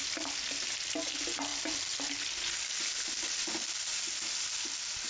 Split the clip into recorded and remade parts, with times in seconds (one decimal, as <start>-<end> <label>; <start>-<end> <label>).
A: 0.0-5.1 recorded